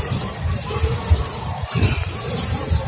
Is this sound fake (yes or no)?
yes